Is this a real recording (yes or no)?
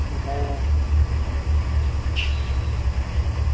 yes